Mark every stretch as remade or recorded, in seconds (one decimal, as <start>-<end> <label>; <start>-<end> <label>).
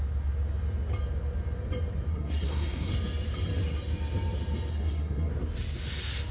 0.0-2.1 recorded; 2.1-2.9 remade; 2.9-4.7 recorded; 4.7-5.3 remade; 5.3-6.3 recorded